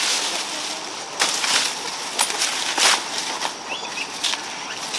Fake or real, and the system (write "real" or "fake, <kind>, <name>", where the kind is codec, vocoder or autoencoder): real